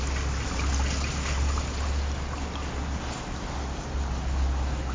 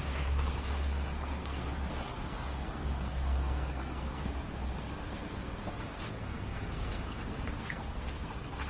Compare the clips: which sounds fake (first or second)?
second